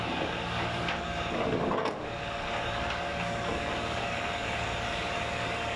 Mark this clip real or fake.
fake